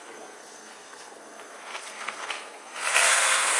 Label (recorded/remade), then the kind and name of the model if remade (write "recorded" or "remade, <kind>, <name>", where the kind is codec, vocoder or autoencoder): remade, codec, SNAC